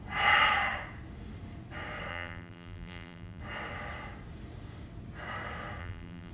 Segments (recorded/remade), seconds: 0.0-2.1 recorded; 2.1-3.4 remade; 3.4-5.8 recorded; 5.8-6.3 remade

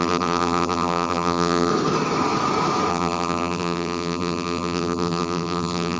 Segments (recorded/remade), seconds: 0.0-1.7 remade; 1.7-2.9 recorded; 2.9-6.0 remade

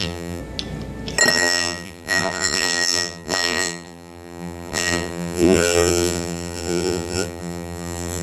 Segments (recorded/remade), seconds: 0.0-0.4 remade; 0.4-1.3 recorded; 1.3-8.2 remade

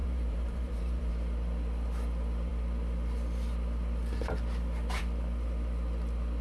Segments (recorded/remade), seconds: 0.0-1.1 remade; 1.1-6.4 recorded

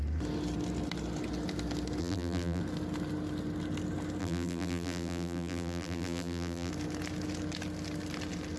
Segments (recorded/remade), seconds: 0.0-2.0 recorded; 2.0-2.6 remade; 2.6-4.2 recorded; 4.2-6.7 remade; 6.7-8.6 recorded

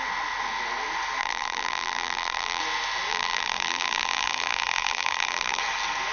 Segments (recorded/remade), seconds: 0.0-1.2 recorded; 1.2-2.6 remade; 2.6-3.1 recorded; 3.1-5.6 remade; 5.6-6.1 recorded

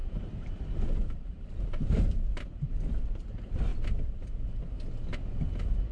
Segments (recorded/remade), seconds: 0.0-2.9 remade; 2.9-5.9 recorded